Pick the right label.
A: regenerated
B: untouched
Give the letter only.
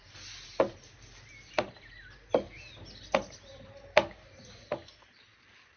B